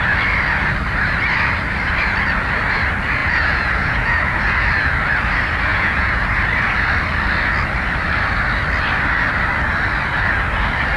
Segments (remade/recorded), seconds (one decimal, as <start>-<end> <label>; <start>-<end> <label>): 0.0-3.2 recorded; 3.2-4.4 remade; 4.4-5.7 recorded; 5.7-6.2 remade; 6.2-11.0 recorded